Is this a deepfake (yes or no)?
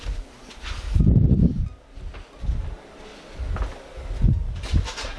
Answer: no